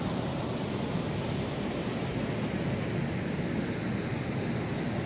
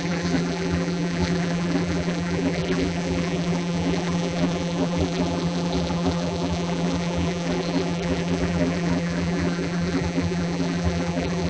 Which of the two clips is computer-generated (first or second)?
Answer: second